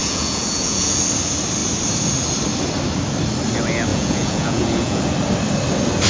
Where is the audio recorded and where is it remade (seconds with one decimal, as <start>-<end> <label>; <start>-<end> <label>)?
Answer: 0.0-1.0 remade; 1.0-3.9 recorded; 3.9-5.0 remade; 5.0-6.1 recorded